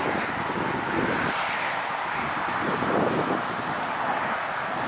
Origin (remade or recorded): recorded